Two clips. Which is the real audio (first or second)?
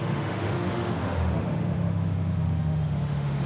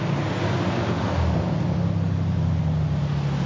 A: second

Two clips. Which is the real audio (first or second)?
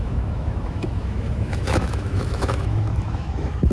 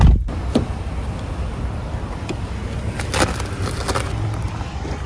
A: second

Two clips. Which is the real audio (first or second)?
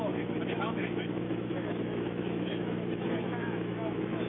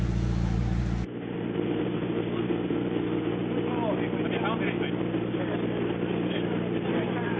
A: second